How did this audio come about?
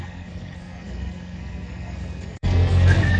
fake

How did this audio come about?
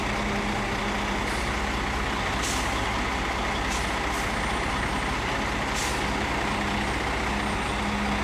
real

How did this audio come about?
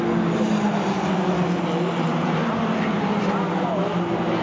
real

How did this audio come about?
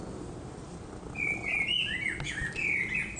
real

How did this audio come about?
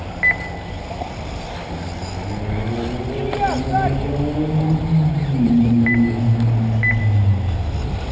real